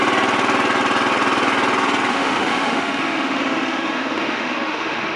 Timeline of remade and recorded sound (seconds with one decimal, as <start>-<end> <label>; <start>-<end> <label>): 0.0-2.1 recorded; 2.1-5.2 remade